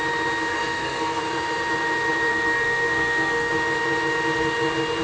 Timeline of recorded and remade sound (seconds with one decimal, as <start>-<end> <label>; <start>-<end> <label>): 0.0-0.5 recorded; 0.5-1.2 remade; 1.2-2.3 recorded; 2.3-3.5 remade; 3.5-5.0 recorded